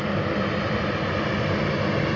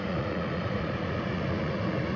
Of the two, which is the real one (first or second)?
first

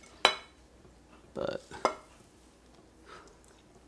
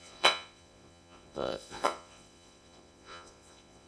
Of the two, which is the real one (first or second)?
first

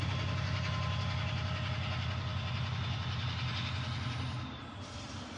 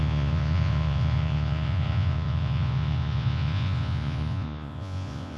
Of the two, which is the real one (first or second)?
first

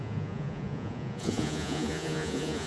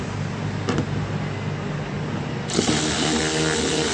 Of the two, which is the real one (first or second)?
second